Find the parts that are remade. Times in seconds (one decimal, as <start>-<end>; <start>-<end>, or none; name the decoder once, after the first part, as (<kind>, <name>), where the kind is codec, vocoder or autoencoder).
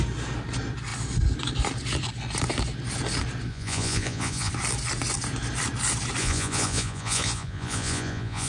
3.5-4.5 (vocoder, Vocos); 6.2-8.5